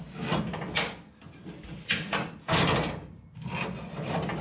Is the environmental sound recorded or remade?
recorded